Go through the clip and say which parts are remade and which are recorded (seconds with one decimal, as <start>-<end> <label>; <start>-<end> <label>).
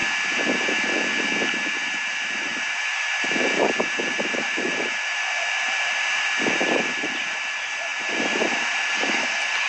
0.0-1.9 recorded; 1.9-9.7 remade